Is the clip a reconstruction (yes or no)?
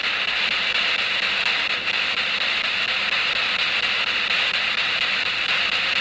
no